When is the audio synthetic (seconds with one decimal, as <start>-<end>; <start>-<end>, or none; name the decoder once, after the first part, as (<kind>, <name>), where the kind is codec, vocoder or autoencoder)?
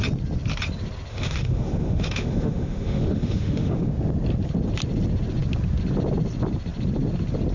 1.1-3.9 (autoencoder, DAC-VAE)